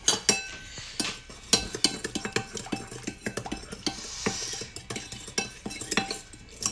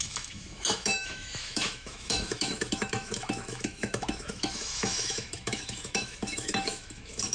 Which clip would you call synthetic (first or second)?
second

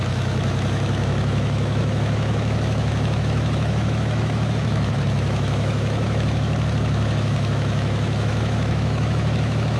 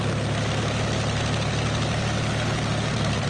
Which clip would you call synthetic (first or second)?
first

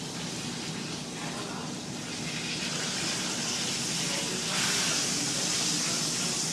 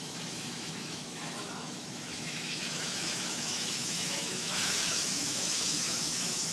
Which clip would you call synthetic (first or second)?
second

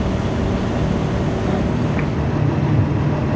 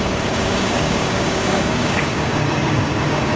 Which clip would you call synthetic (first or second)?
second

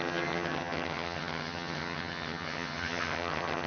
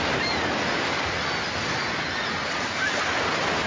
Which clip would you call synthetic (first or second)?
first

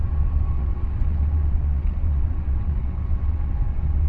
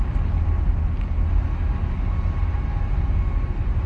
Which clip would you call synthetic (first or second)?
first